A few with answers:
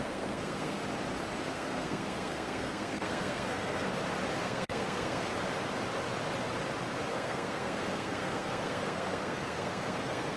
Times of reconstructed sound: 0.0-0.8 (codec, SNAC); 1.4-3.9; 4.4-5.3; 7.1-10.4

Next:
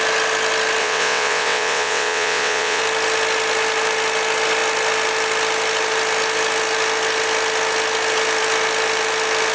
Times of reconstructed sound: 0.8-2.8 (vocoder, WaveNeXt)

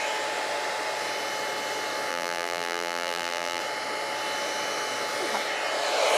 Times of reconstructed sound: 2.1-3.6 (vocoder, BigVGAN v2)